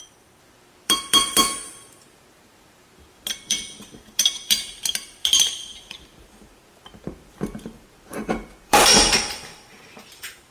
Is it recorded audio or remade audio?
remade